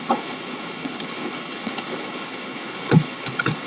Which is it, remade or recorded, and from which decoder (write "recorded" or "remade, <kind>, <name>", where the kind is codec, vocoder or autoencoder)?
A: remade, codec, HILCodec